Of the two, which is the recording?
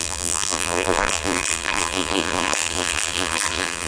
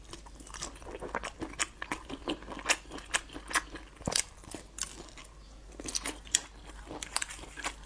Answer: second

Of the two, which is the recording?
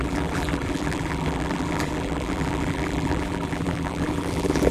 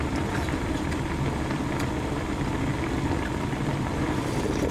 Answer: second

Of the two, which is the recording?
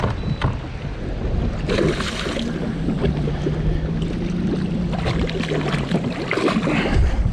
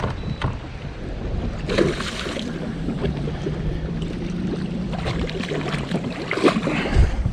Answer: first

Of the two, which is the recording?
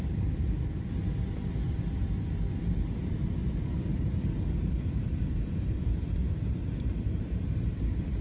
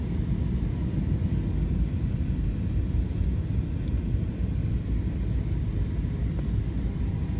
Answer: second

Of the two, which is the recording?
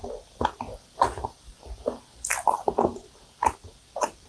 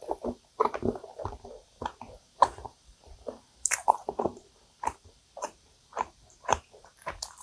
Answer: first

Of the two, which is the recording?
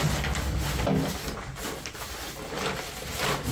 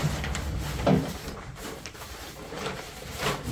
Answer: first